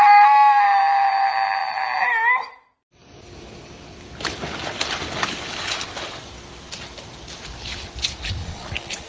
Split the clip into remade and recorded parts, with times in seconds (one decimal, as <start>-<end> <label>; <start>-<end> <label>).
0.0-8.4 recorded; 8.4-9.1 remade